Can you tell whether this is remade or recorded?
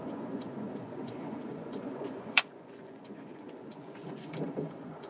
remade